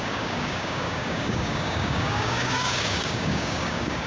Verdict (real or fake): fake